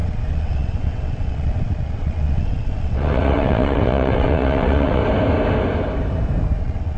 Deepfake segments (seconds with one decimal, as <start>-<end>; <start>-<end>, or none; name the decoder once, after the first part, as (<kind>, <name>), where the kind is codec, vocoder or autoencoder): 0.0-5.0 (vocoder, WaveNeXt); 6.6-7.0